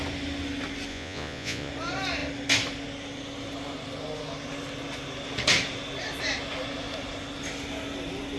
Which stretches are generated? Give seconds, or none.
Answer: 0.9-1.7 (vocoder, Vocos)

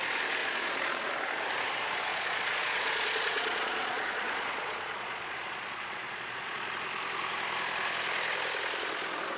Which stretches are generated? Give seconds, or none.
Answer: 0.4-1.1 (vocoder, Vocos); 2.1-6.7

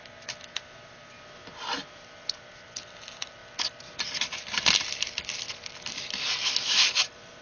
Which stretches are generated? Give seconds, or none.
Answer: none

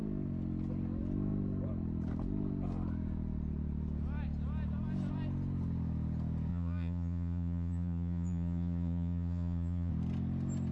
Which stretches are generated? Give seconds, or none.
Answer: 6.5-9.9 (vocoder, Vocos)

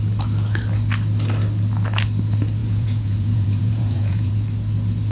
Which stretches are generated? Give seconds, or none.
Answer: 2.6-4.3 (vocoder, Vocos)

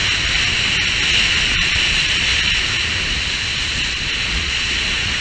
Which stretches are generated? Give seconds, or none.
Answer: 1.5-2.3 (vocoder, Vocos); 3.7-5.2